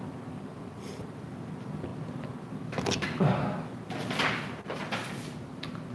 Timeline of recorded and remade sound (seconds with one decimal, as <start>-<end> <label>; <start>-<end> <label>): 0.0-5.9 recorded